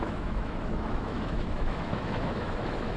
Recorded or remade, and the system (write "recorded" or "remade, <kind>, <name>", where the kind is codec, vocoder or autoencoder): remade, autoencoder, DAC-VAE